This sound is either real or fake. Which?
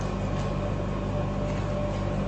real